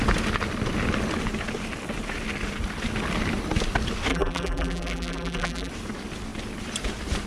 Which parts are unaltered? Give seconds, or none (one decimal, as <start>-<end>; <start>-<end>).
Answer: 0.0-4.1; 5.7-7.3